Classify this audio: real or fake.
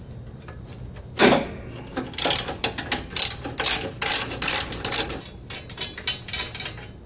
real